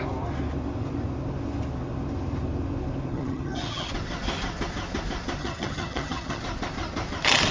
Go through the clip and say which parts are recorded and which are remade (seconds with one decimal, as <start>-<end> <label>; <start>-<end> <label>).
0.0-3.1 recorded; 3.1-3.9 remade; 3.9-5.4 recorded; 5.4-6.4 remade; 6.4-7.5 recorded